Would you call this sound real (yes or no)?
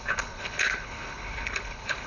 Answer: no